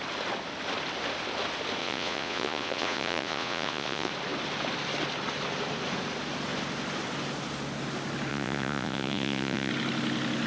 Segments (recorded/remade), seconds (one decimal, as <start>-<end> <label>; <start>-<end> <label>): 0.0-1.8 recorded; 1.8-4.1 remade; 4.1-8.3 recorded; 8.3-9.7 remade; 9.7-10.5 recorded